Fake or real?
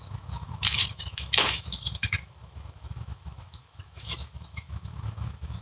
fake